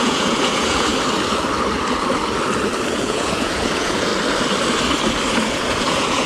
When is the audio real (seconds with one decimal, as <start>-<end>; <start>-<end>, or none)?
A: 0.9-2.9; 4.1-5.3